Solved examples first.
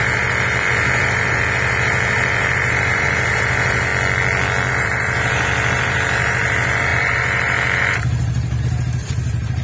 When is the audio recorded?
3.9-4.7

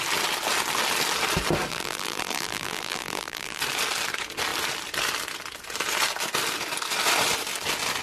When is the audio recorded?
0.0-1.7; 3.6-8.0

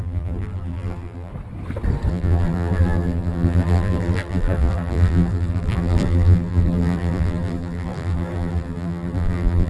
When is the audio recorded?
1.3-2.1

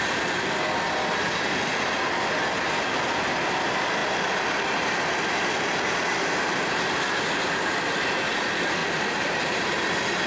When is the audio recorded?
0.0-8.8; 9.9-10.3

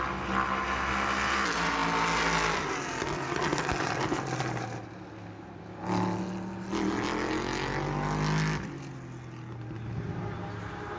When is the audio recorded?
0.0-11.0

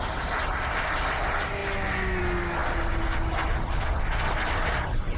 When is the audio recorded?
0.0-5.2

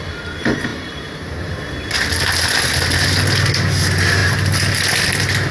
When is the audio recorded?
0.0-0.7; 1.7-4.2; 4.8-5.5

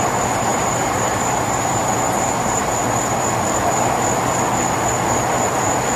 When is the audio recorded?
0.0-0.5; 2.8-6.0